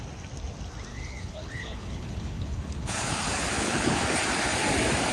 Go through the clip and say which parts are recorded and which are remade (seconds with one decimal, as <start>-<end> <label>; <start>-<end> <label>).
0.0-0.9 recorded; 0.9-4.0 remade; 4.0-5.1 recorded